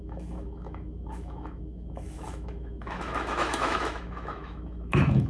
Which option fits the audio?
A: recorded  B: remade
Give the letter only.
B